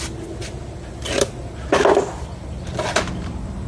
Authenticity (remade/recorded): recorded